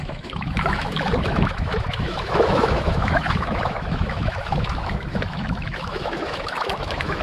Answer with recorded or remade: remade